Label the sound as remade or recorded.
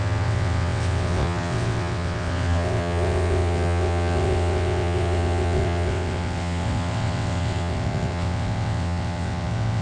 remade